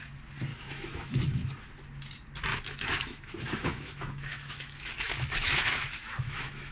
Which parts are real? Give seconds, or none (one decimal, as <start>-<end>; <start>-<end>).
0.0-0.5; 1.2-2.5